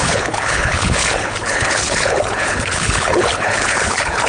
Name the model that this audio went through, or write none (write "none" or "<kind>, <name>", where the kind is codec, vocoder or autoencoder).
codec, HILCodec